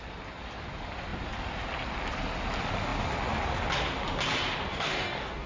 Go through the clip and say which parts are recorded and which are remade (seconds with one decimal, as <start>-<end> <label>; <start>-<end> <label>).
0.0-4.7 recorded; 4.7-5.5 remade